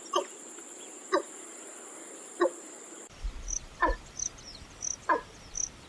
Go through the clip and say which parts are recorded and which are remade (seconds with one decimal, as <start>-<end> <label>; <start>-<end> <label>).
0.0-5.9 recorded